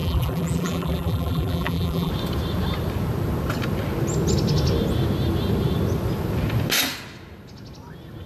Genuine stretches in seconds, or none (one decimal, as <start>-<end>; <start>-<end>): 2.1-8.3